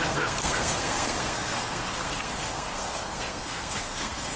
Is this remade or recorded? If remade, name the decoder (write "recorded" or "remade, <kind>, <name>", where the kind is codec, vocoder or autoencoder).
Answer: remade, codec, SNAC